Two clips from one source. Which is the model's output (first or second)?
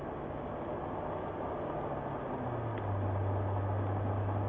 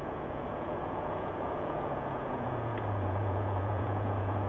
second